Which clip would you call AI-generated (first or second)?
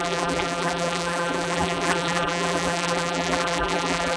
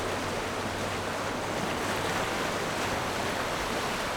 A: first